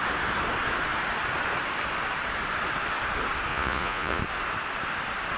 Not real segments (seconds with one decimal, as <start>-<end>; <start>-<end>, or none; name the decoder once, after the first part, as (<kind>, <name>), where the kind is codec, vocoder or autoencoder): 3.5-4.2 (vocoder, Vocos)